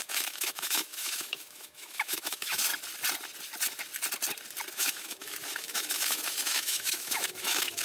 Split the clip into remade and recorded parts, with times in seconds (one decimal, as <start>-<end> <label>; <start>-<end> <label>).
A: 0.0-2.7 remade; 2.7-4.7 recorded; 4.7-7.8 remade